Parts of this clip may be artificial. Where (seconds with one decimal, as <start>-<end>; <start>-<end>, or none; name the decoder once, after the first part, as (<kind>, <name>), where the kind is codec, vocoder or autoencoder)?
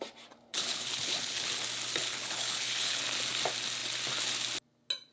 0.5-1.5 (codec, HILCodec); 2.0-3.0